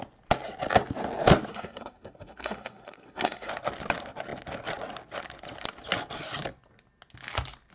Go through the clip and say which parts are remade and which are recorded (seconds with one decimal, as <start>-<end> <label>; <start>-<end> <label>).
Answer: 0.0-1.5 recorded; 1.5-3.5 remade; 3.5-7.7 recorded